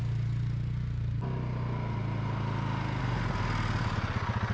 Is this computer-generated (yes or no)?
no